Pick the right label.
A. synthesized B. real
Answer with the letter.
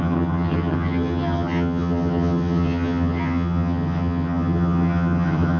A